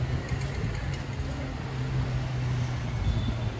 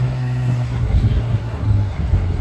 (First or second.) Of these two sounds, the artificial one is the second